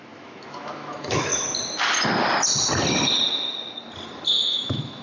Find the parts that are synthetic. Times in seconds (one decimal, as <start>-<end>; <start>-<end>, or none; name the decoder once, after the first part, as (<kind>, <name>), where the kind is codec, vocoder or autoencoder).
0.0-1.3 (autoencoder, DAC-VAE); 4.3-5.0